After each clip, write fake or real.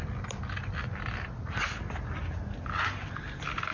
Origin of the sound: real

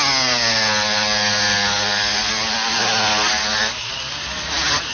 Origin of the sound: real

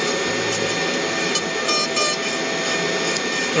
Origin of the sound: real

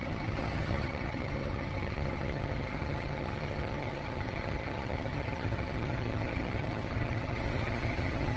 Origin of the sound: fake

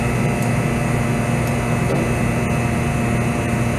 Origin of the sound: real